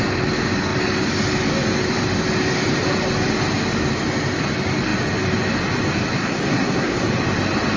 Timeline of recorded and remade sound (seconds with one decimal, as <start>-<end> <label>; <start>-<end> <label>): 0.0-6.2 recorded; 6.2-7.1 remade; 7.1-7.8 recorded